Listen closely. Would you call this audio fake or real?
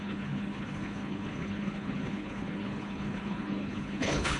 fake